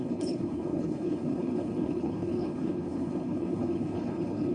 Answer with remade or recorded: remade